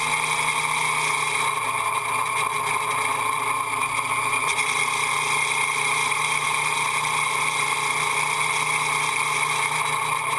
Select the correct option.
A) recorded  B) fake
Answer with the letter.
A